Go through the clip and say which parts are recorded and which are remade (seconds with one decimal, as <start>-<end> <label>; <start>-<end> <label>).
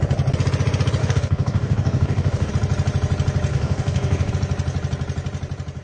0.0-1.0 recorded; 1.0-2.5 remade; 2.5-3.5 recorded; 3.5-4.3 remade; 4.3-5.8 recorded